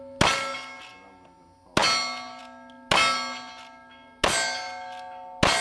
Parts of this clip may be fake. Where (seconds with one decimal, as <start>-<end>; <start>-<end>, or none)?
none